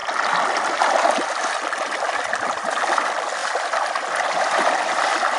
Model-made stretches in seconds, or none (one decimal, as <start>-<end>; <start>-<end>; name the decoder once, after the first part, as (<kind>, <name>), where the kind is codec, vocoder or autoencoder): 0.0-3.4 (vocoder, BigVGAN v2); 4.4-5.4

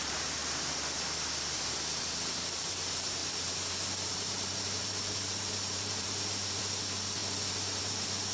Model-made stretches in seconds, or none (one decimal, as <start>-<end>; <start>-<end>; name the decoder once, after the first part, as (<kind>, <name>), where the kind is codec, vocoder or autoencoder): 0.0-0.4 (vocoder, BigVGAN v2); 2.5-7.2; 7.8-8.3

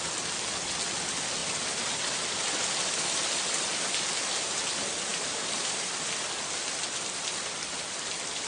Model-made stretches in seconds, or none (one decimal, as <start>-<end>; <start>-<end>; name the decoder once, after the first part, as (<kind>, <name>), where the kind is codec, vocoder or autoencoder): 5.1-6.0 (vocoder, BigVGAN v2)

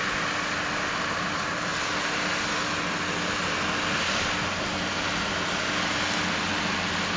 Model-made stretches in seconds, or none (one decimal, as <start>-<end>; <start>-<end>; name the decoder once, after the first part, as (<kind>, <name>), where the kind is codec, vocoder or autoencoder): none

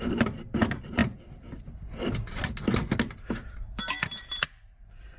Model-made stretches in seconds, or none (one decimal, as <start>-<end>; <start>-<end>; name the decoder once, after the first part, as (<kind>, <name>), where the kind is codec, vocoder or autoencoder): 0.0-1.0 (vocoder, BigVGAN v2); 4.1-5.2